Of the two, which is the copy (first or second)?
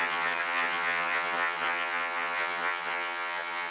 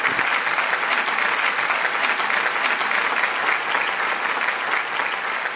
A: first